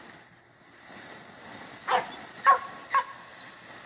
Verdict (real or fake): real